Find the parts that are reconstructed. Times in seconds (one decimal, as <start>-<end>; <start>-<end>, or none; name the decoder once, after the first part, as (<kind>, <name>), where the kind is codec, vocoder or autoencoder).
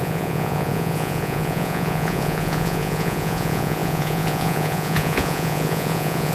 0.0-6.3 (vocoder, Vocos)